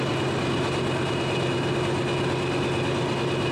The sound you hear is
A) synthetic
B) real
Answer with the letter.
B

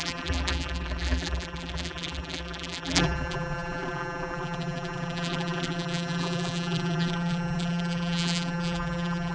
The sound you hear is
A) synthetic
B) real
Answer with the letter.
A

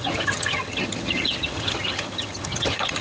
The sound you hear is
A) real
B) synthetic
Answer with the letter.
B